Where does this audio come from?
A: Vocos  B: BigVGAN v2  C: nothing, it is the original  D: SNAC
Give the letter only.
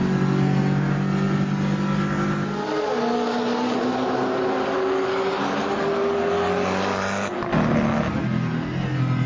C